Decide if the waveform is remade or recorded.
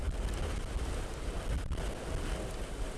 recorded